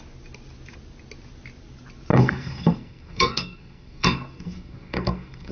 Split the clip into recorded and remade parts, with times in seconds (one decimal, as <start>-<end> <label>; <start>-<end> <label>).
0.0-2.1 recorded; 2.1-5.5 remade

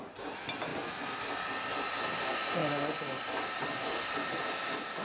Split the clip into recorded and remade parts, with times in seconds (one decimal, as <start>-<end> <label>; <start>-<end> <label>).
0.0-5.0 recorded